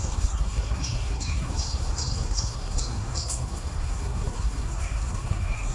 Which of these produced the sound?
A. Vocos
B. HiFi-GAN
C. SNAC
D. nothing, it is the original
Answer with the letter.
C